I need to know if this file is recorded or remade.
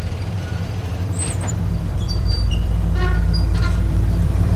remade